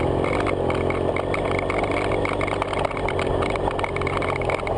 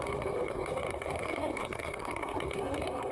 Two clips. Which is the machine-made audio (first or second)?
second